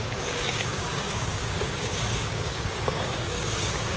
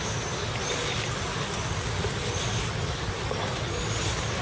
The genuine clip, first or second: second